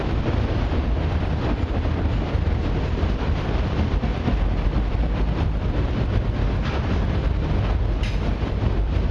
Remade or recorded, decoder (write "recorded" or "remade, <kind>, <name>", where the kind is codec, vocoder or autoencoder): remade, vocoder, BigVGAN v2